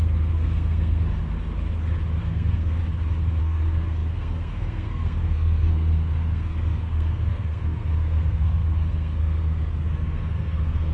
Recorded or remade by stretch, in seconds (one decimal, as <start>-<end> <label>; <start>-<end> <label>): 0.0-1.2 remade; 1.2-2.2 recorded; 2.2-2.8 remade; 2.8-3.4 recorded; 3.4-10.9 remade